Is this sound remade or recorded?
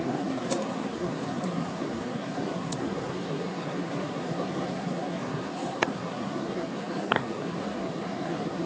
remade